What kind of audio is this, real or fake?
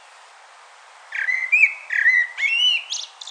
real